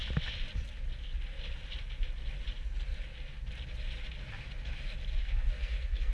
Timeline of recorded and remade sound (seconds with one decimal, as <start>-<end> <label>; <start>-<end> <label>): 0.0-5.2 recorded; 5.2-6.1 remade